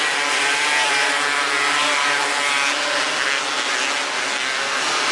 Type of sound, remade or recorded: recorded